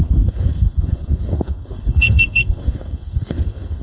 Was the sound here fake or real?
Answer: fake